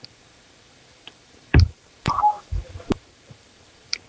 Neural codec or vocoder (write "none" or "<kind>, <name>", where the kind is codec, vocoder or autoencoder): vocoder, BigVGAN v2